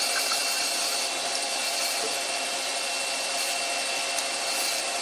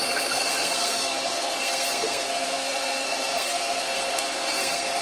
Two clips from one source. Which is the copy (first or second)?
second